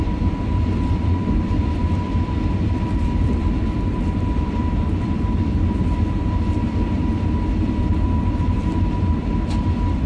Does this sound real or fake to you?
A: fake